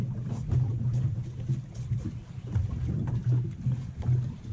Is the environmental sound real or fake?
real